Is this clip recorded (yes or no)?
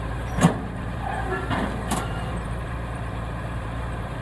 no